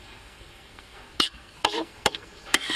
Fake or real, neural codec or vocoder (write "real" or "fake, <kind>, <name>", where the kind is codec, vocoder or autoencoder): fake, codec, SNAC